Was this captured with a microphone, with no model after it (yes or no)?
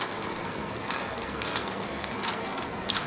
no